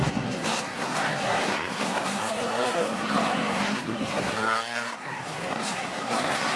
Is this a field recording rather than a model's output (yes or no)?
no